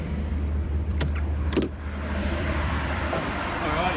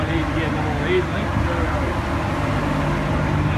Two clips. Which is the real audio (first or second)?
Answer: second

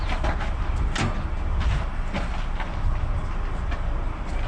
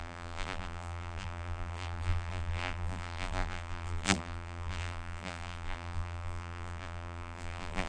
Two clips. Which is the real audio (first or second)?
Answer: first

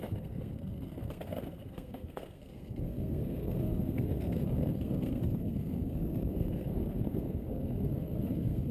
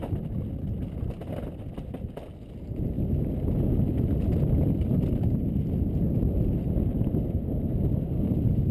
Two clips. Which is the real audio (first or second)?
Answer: second